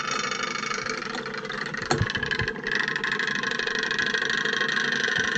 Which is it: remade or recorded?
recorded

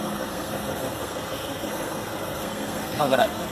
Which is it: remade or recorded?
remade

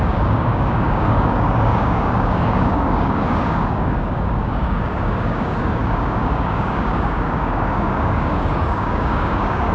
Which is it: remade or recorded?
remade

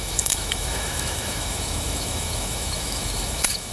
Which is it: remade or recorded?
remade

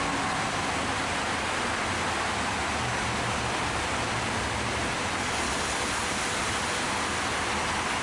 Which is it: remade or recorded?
recorded